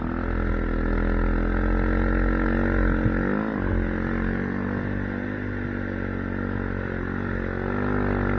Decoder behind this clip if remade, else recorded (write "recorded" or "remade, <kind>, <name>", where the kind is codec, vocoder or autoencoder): recorded